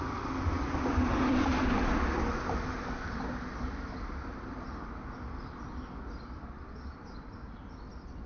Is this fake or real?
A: real